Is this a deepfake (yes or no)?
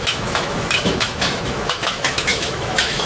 yes